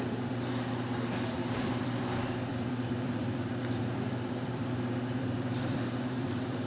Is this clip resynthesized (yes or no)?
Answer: yes